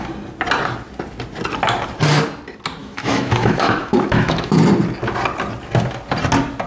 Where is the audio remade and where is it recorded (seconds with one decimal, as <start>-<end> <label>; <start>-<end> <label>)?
0.0-2.8 recorded; 2.8-4.6 remade; 4.6-6.7 recorded